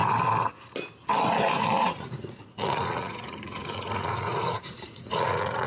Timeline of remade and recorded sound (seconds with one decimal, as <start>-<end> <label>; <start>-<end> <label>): 0.0-1.8 recorded; 1.8-5.7 remade